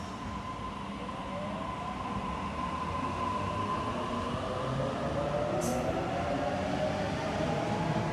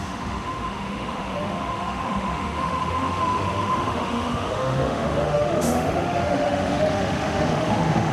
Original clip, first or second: first